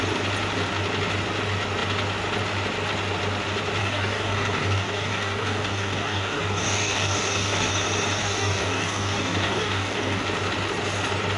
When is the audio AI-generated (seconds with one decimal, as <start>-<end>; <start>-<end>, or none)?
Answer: 3.8-7.7; 8.2-10.2

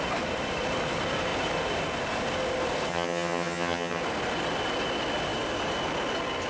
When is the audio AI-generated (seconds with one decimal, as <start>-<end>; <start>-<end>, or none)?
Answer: 2.9-4.0

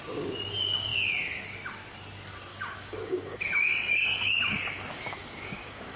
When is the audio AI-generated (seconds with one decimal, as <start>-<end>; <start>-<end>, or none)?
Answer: 2.5-6.0

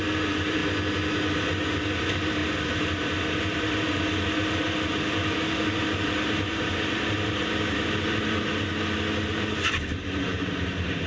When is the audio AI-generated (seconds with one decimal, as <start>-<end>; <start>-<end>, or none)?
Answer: 0.0-0.6; 2.0-8.7; 9.3-11.1

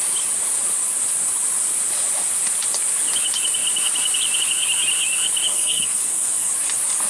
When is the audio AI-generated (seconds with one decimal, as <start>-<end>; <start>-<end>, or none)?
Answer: 5.5-6.5

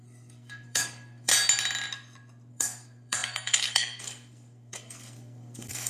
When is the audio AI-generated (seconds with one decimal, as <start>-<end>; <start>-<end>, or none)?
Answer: 0.0-1.3; 2.5-5.9

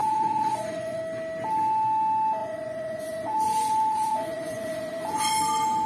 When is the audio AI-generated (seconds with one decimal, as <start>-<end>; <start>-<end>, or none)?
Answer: 0.0-1.0; 2.4-5.3